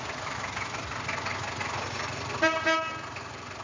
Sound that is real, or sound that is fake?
real